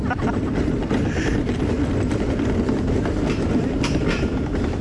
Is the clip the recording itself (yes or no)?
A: no